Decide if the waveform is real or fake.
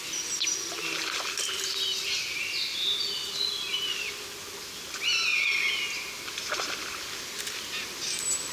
real